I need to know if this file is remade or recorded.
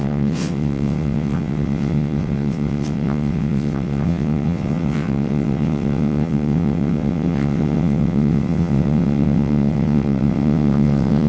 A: remade